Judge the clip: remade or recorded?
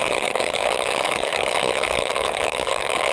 remade